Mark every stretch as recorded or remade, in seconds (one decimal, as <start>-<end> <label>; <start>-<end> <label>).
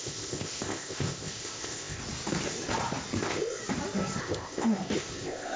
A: 0.0-2.0 remade; 2.0-3.2 recorded; 3.2-3.6 remade; 3.6-4.2 recorded; 4.2-5.6 remade